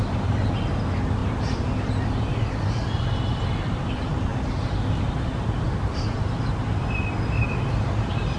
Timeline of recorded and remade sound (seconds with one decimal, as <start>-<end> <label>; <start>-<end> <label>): 0.0-8.4 recorded